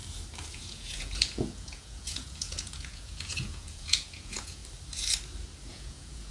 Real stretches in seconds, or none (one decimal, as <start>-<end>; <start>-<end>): 0.0-0.5; 4.6-5.7

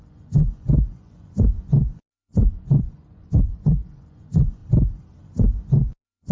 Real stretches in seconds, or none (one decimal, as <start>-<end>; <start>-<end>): 4.6-5.2

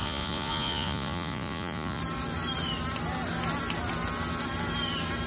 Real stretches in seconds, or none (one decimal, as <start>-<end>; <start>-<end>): 2.0-5.3

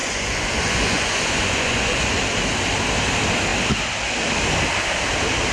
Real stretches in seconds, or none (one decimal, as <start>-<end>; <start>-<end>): 2.2-5.5

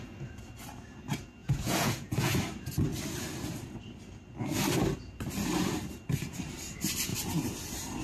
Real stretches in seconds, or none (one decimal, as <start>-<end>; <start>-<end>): 0.0-1.4; 2.3-8.0

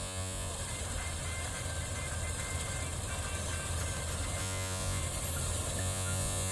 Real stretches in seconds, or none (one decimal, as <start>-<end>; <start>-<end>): 0.5-4.4; 5.0-5.8

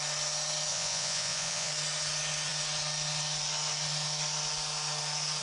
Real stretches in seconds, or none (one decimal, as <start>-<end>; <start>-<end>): 0.0-0.7; 1.7-5.4

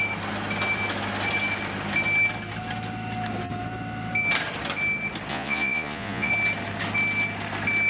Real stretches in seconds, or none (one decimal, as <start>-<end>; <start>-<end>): 0.0-5.3; 6.3-7.9